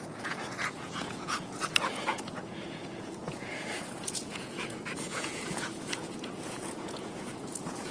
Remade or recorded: remade